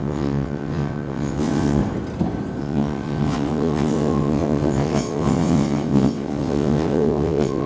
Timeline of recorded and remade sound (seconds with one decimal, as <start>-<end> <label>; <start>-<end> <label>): 0.0-1.8 remade; 1.8-2.6 recorded; 2.6-7.7 remade